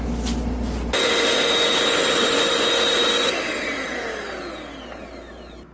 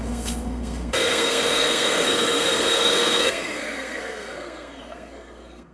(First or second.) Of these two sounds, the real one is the first